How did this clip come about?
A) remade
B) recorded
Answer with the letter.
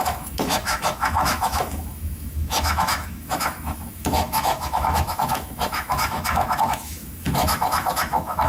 A